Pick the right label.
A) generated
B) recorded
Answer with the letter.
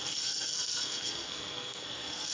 A